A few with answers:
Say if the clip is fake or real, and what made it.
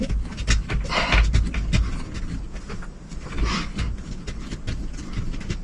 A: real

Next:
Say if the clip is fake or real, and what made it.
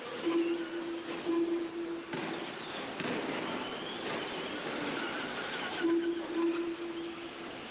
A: real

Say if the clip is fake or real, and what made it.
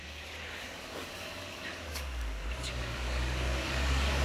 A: fake, codec, DAC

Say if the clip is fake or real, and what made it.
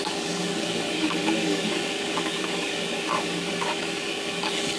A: fake, codec, DAC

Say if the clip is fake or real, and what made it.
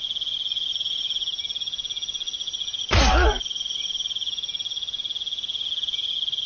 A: real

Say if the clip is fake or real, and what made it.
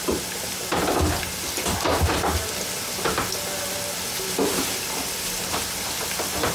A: real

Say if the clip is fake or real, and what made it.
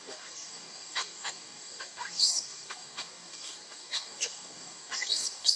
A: fake, codec, DAC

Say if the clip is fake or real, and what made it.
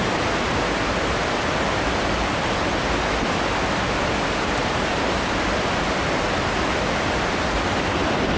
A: real